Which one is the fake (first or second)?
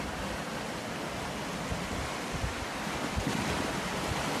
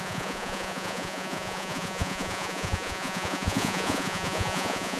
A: second